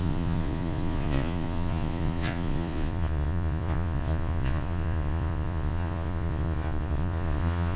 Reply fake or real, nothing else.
fake